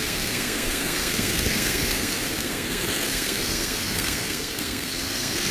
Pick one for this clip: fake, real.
fake